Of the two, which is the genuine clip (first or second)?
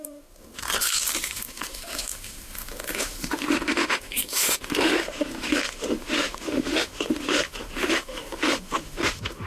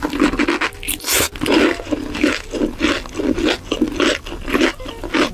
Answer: second